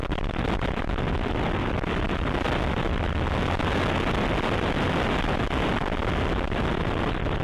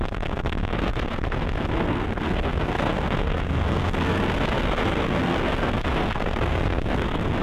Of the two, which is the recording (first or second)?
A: first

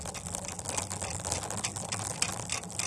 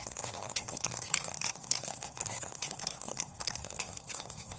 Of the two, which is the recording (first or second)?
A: first